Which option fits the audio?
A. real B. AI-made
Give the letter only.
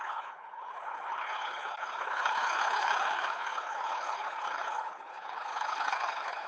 B